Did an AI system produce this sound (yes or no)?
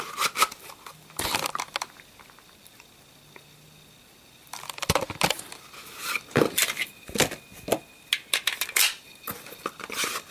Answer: no